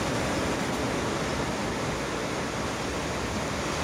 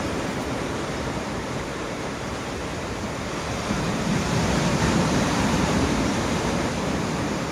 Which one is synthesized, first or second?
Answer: second